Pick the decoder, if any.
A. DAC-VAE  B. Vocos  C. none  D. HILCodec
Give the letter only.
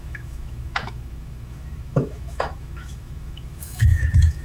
A